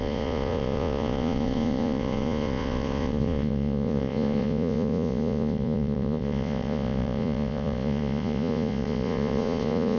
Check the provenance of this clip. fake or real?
fake